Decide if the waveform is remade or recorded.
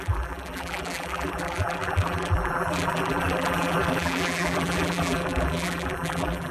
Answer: remade